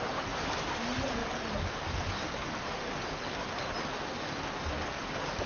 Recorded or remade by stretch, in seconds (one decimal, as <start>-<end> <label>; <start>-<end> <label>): 0.0-5.5 recorded